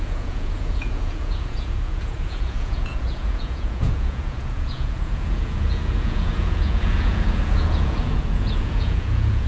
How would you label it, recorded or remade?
remade